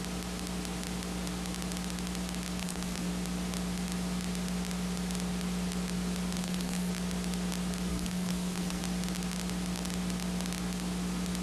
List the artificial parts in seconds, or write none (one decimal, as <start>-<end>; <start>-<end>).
2.6-3.1; 6.4-6.9; 7.9-8.8